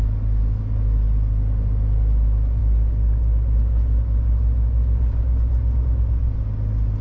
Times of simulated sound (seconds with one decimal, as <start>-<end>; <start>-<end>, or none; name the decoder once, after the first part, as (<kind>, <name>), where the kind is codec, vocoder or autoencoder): none